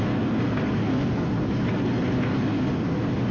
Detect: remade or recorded recorded